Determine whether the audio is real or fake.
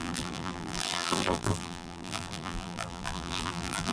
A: fake